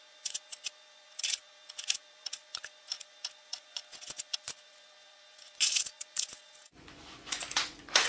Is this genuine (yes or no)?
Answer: no